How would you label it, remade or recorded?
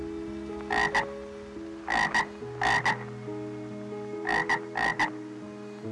recorded